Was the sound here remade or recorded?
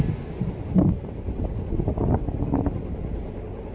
recorded